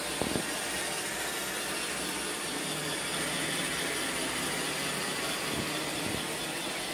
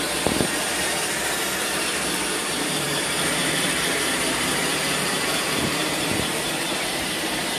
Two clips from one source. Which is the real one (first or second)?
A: first